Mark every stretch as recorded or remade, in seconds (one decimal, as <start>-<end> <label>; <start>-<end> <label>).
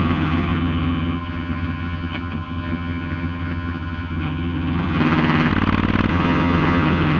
0.0-5.5 remade; 5.5-6.1 recorded; 6.1-7.2 remade